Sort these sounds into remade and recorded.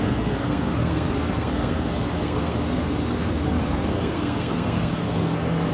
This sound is remade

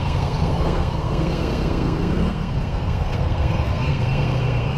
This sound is remade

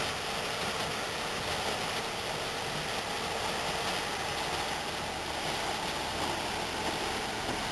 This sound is recorded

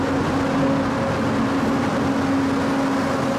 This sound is recorded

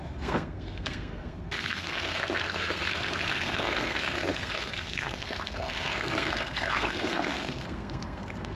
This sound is remade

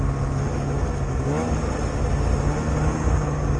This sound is recorded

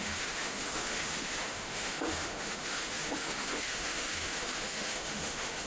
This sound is remade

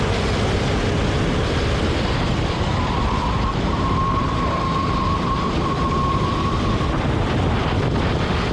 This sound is recorded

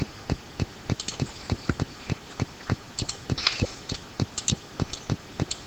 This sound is recorded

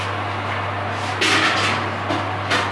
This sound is recorded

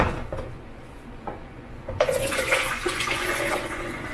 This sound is remade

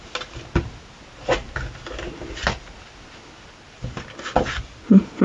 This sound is recorded